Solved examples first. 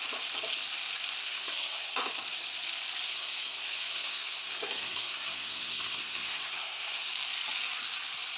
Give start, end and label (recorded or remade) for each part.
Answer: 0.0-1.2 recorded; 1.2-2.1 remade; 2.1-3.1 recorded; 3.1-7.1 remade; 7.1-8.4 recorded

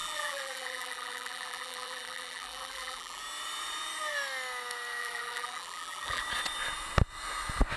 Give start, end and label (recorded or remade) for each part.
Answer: 0.0-3.2 remade; 3.2-5.0 recorded; 5.0-6.2 remade; 6.2-7.8 recorded